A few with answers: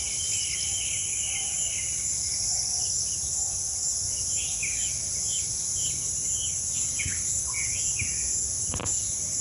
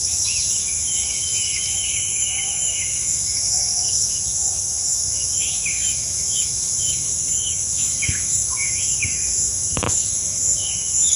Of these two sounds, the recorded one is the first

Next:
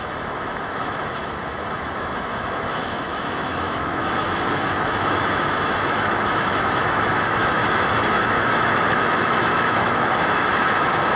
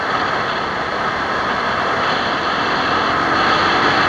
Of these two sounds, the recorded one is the second